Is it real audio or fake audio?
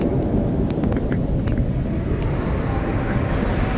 real